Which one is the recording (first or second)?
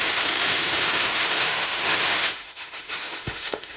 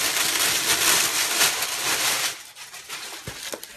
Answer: second